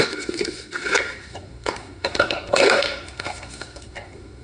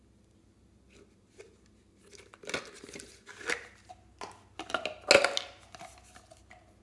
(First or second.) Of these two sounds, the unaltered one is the second